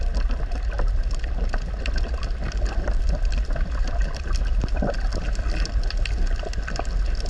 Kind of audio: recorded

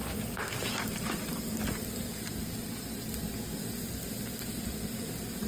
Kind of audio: recorded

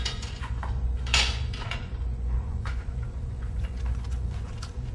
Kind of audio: remade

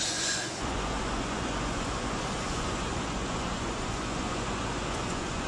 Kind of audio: remade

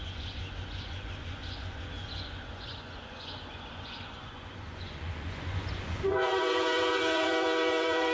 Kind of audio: remade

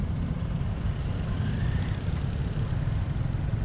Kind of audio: recorded